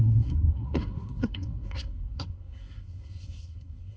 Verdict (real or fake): fake